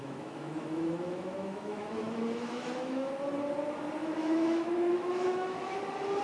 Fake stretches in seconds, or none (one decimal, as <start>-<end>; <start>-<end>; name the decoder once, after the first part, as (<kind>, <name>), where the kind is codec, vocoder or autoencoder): 0.0-3.1 (autoencoder, DAC-VAE); 4.0-5.6